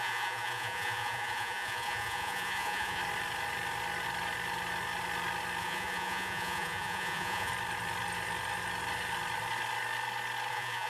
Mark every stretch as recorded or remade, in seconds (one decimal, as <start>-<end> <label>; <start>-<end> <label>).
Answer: 0.0-3.0 remade; 3.0-5.6 recorded; 5.6-7.5 remade; 7.5-10.5 recorded; 10.5-10.9 remade